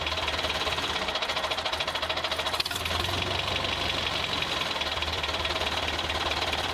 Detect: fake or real real